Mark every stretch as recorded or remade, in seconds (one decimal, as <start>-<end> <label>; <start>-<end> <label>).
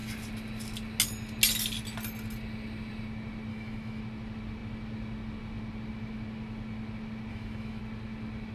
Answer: 0.0-3.5 recorded; 3.5-4.0 remade; 4.0-7.3 recorded; 7.3-7.8 remade; 7.8-8.5 recorded